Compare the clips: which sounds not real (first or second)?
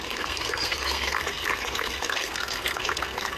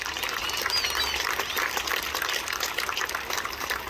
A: first